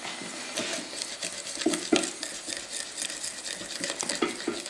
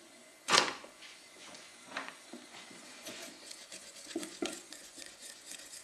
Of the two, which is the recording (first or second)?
first